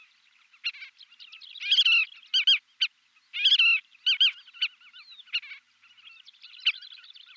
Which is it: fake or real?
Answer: real